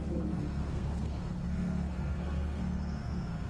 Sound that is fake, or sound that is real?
fake